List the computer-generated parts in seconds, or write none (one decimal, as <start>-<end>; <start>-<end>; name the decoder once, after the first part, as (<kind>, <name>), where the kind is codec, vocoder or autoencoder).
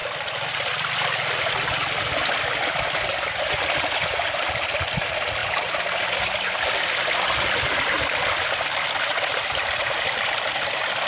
none